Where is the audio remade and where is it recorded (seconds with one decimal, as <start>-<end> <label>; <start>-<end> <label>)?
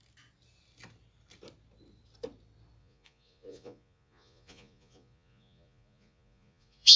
0.0-2.8 recorded; 2.8-7.0 remade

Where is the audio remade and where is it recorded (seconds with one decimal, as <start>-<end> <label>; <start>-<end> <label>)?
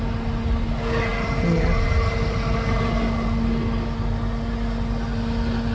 0.0-5.7 recorded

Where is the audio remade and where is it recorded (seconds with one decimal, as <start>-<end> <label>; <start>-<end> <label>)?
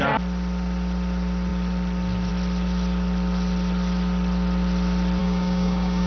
0.0-5.2 recorded; 5.2-6.1 remade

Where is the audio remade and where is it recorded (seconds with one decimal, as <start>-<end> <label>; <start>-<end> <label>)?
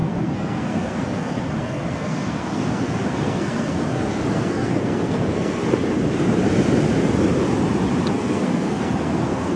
0.0-5.6 remade; 5.6-8.1 recorded; 8.1-9.6 remade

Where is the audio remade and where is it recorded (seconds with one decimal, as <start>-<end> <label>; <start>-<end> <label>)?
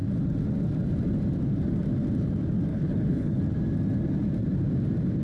0.0-2.7 recorded; 2.7-3.4 remade; 3.4-5.2 recorded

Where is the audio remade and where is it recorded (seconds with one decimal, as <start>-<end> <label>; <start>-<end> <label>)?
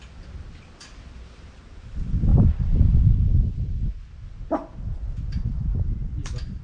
0.0-6.6 recorded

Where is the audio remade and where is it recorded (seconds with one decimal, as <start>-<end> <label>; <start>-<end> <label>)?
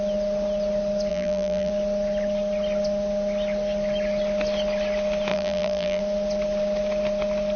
0.0-1.1 recorded; 1.1-1.7 remade; 1.7-5.3 recorded; 5.3-6.0 remade; 6.0-7.6 recorded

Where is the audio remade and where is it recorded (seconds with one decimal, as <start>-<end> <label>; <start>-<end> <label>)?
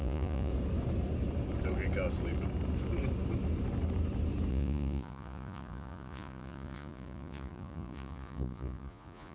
0.0-0.5 remade; 0.5-4.5 recorded; 4.5-9.3 remade